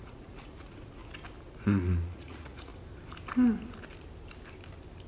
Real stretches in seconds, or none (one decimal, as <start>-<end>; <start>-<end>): 1.0-1.6; 2.7-5.1